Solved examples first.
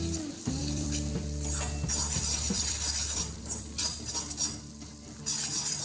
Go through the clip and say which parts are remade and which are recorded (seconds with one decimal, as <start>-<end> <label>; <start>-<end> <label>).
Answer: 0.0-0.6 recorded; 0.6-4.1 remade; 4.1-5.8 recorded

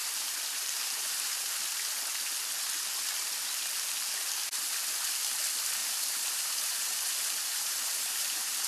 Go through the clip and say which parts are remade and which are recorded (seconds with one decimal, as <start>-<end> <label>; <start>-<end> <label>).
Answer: 0.0-1.5 remade; 1.5-5.8 recorded; 5.8-8.7 remade

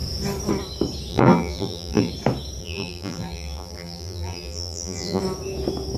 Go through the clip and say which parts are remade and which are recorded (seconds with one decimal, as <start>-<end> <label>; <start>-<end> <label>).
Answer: 0.0-1.1 recorded; 1.1-2.1 remade; 2.1-2.6 recorded; 2.6-5.2 remade; 5.2-6.0 recorded

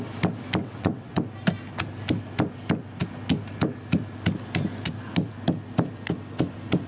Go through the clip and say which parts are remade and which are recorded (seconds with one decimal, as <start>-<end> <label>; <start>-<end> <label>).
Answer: 0.0-0.6 recorded; 0.6-1.2 remade; 1.2-6.9 recorded

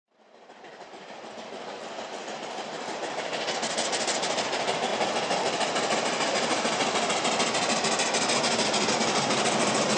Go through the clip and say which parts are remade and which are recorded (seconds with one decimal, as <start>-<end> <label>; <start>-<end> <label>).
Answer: 0.0-0.7 recorded; 0.7-1.3 remade; 1.3-10.0 recorded

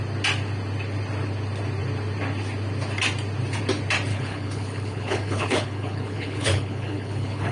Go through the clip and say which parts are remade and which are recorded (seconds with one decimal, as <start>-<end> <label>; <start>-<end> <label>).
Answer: 0.0-4.1 recorded; 4.1-7.5 remade